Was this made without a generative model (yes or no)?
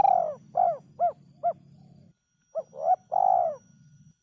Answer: yes